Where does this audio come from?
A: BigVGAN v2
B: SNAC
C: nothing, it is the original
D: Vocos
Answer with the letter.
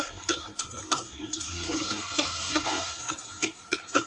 B